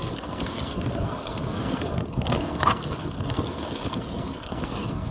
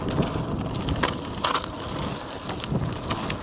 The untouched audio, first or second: second